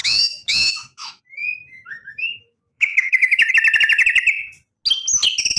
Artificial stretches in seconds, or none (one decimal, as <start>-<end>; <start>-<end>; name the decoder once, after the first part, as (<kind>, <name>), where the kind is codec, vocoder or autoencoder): 0.0-1.2 (autoencoder, DAC-VAE); 1.6-3.5